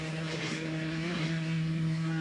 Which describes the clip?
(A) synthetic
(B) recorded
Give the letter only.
A